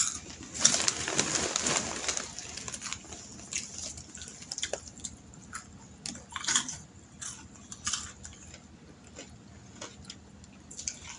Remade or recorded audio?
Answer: recorded